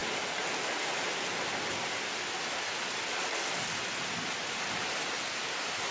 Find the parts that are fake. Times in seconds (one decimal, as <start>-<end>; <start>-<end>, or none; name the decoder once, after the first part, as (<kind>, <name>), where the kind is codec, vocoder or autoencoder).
none